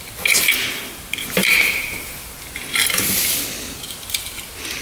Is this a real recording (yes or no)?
yes